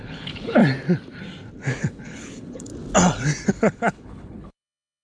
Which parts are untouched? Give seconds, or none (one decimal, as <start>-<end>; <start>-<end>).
0.6-1.8; 2.7-3.5